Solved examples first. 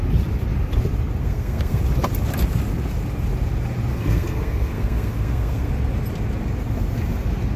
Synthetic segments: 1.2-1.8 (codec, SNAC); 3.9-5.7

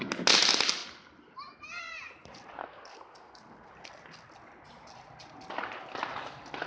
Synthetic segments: 2.6-3.7 (codec, SNAC)

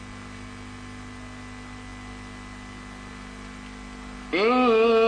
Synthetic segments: none

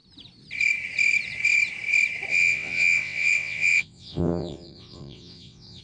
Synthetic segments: 2.3-5.8 (vocoder, WaveNeXt)